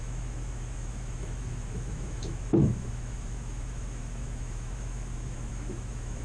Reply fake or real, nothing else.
fake